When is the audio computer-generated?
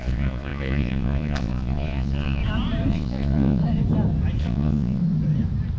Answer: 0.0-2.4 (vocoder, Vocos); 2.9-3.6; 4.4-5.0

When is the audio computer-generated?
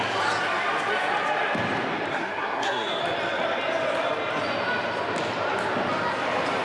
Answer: 2.1-3.0 (codec, SNAC)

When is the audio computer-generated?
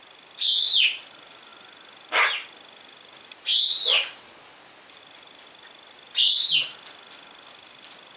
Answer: none